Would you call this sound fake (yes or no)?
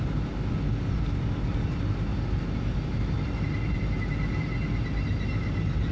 no